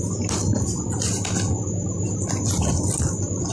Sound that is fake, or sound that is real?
real